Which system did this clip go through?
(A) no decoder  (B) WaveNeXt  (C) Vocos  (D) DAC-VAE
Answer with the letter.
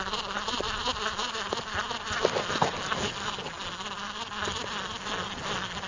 A